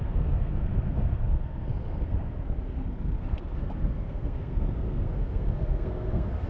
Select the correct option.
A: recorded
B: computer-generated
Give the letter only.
B